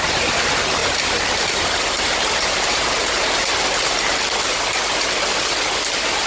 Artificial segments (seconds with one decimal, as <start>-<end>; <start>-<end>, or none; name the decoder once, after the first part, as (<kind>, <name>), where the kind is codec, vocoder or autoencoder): 0.8-4.6 (vocoder, BigVGAN v2)